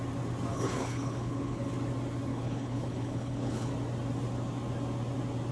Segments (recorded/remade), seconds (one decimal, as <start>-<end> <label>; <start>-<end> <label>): 0.0-0.5 recorded; 0.5-1.7 remade; 1.7-2.3 recorded; 2.3-3.7 remade; 3.7-5.5 recorded